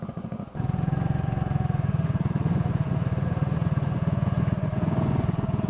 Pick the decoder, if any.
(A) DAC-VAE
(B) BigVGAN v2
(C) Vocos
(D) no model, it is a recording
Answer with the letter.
C